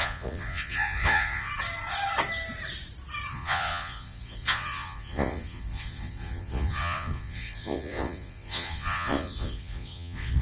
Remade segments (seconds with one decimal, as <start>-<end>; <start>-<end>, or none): 0.0-1.5; 3.3-10.4